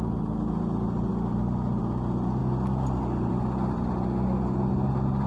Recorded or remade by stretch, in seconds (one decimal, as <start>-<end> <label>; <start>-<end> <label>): 0.0-5.3 recorded